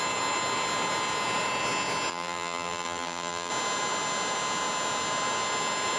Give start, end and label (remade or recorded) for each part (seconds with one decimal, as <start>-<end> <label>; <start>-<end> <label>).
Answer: 0.0-2.1 recorded; 2.1-3.5 remade; 3.5-6.0 recorded